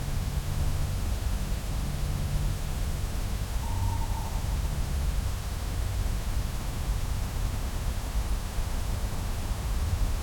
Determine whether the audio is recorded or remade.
remade